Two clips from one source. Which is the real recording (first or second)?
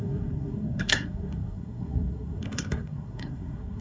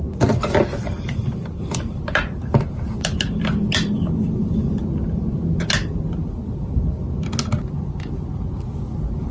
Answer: second